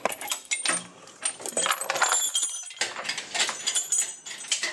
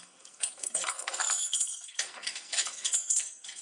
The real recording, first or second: first